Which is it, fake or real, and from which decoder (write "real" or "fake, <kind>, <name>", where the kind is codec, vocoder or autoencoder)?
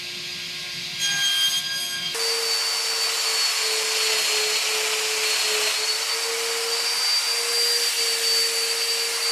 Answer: real